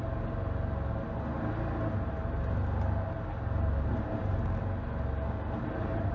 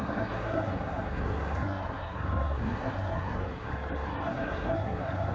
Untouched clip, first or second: first